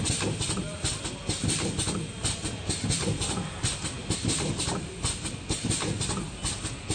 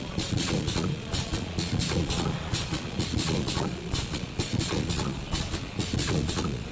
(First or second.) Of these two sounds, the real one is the first